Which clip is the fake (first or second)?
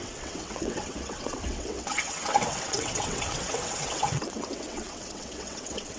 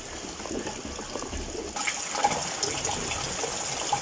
first